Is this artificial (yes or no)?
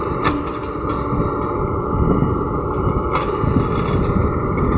no